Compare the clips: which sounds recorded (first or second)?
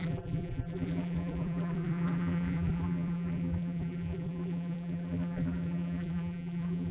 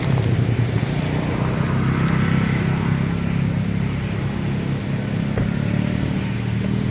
second